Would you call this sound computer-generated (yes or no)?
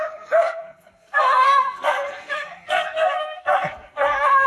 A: yes